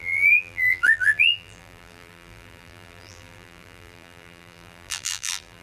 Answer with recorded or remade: remade